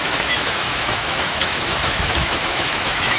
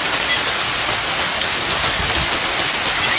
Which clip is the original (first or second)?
second